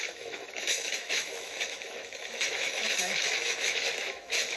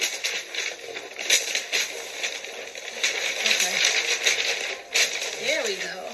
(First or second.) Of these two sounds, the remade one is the first